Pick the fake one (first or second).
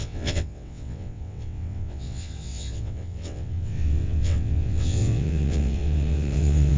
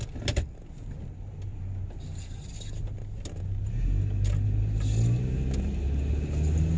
first